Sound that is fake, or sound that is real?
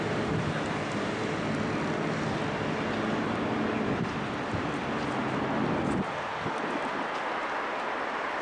real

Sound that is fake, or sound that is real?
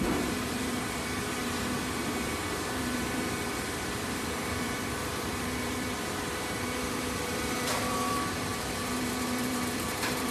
fake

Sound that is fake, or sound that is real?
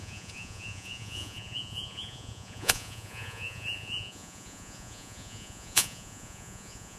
fake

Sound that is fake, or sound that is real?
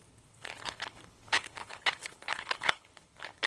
fake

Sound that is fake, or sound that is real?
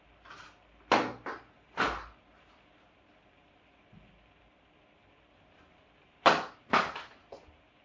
real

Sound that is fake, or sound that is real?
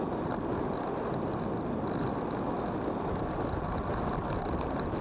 real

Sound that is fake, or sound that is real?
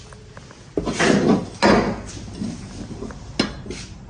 real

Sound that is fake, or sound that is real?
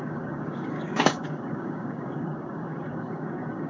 fake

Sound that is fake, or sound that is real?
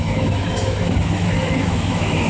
fake